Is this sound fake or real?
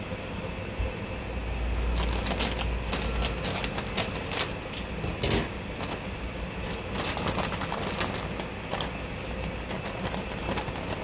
real